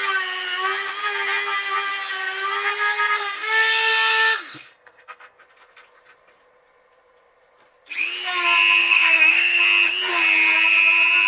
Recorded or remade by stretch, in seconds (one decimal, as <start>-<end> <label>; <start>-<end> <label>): 0.0-2.7 recorded; 2.7-5.4 remade; 5.4-8.8 recorded; 8.8-9.6 remade; 9.6-11.3 recorded